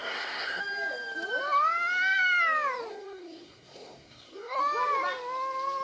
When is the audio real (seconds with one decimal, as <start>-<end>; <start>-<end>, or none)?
0.6-2.9; 4.6-5.8